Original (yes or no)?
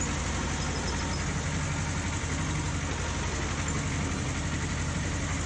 yes